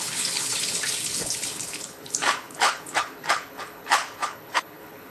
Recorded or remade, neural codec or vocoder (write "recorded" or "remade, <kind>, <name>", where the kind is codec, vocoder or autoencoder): remade, codec, HILCodec